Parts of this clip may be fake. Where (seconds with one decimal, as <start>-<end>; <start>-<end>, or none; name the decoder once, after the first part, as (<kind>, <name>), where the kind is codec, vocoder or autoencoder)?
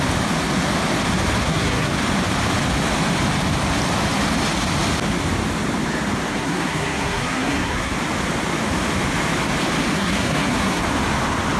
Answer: 1.4-1.9 (codec, SNAC); 6.3-7.9; 9.9-10.8